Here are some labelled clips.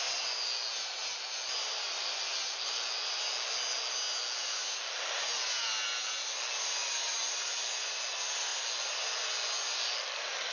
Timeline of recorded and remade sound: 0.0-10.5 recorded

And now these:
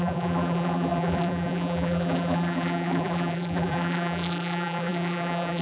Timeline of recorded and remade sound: 0.0-5.6 remade

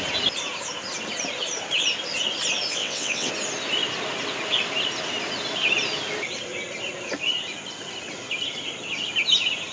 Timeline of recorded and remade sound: 0.0-2.8 recorded; 2.8-3.3 remade; 3.3-9.7 recorded

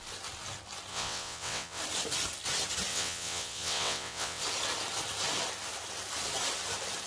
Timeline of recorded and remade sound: 0.0-0.9 recorded; 0.9-1.8 remade; 1.8-2.9 recorded; 2.9-4.4 remade; 4.4-7.1 recorded

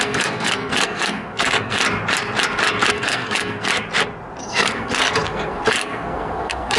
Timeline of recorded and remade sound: 0.0-1.8 remade; 1.8-2.9 recorded; 2.9-3.7 remade; 3.7-4.4 recorded; 4.4-6.8 remade